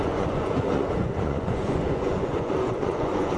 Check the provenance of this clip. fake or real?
fake